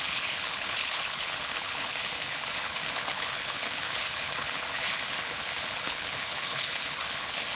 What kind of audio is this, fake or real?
fake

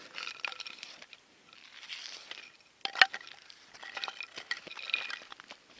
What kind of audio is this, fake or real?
real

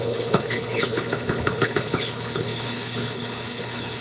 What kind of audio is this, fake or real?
fake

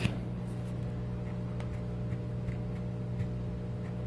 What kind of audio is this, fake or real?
real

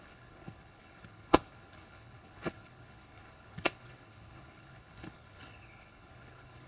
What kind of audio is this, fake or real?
fake